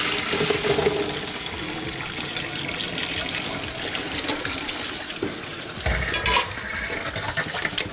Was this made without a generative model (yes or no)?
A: yes